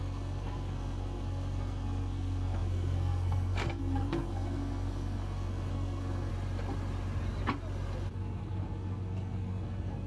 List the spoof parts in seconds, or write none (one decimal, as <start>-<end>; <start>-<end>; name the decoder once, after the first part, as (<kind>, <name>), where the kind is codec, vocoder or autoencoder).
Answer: 0.0-6.3 (codec, SNAC); 8.1-10.1